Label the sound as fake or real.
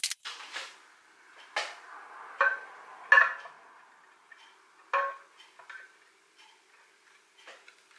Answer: real